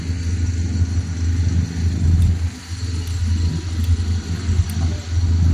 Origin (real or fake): real